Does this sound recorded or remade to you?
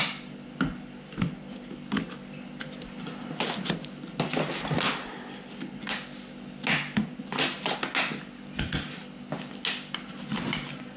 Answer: recorded